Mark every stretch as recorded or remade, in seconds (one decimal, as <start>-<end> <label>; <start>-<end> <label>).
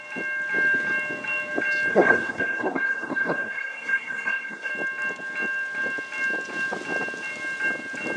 0.0-1.9 recorded; 1.9-4.7 remade; 4.7-8.2 recorded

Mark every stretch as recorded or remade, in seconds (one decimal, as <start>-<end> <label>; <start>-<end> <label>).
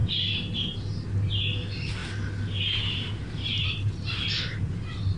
0.0-5.2 recorded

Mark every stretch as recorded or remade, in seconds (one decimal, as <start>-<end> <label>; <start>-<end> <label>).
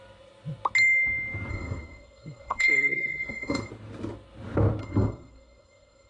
0.0-1.5 recorded; 1.5-3.7 remade; 3.7-4.8 recorded; 4.8-6.1 remade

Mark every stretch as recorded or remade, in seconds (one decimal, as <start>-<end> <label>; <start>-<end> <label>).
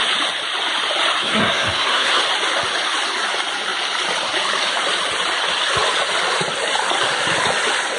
0.0-1.2 recorded; 1.2-2.2 remade; 2.2-8.0 recorded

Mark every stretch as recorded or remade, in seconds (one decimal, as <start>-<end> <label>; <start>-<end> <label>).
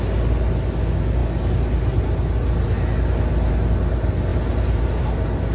0.0-5.5 recorded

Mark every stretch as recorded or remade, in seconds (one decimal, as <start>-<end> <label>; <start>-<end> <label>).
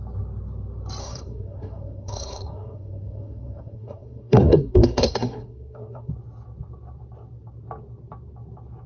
0.0-1.0 recorded; 1.0-6.1 remade; 6.1-8.9 recorded